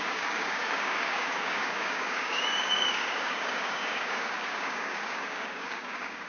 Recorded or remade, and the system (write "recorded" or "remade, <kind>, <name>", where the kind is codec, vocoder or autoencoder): remade, codec, DAC